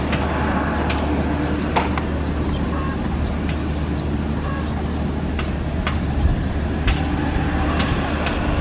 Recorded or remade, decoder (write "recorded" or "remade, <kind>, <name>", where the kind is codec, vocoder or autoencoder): recorded